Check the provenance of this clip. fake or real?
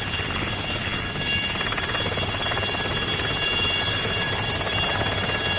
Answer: real